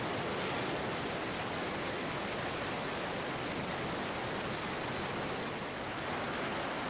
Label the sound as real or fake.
real